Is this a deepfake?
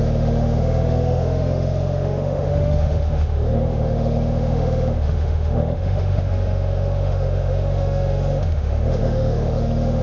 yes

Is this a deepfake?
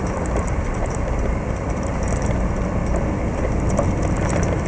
yes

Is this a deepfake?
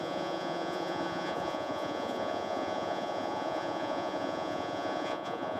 yes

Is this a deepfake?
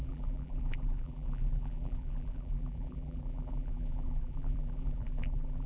yes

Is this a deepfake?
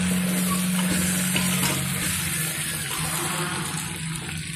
no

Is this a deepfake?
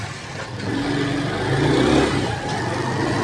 no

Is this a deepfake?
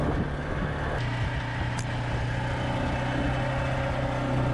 no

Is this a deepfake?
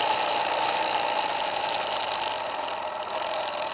no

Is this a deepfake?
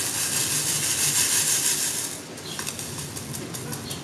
no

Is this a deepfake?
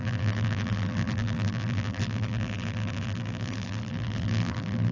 yes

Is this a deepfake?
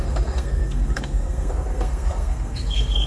yes